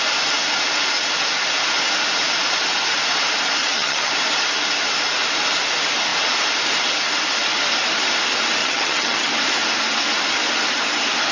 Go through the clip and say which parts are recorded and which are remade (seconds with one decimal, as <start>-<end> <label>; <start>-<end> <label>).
0.0-3.6 recorded; 3.6-4.1 remade; 4.1-8.6 recorded; 8.6-9.3 remade; 9.3-11.3 recorded